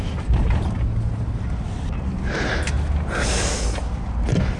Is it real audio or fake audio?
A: real